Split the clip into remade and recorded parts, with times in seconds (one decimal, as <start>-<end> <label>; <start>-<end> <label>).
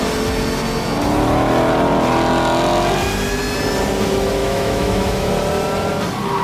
0.0-4.4 recorded; 4.4-5.3 remade; 5.3-6.4 recorded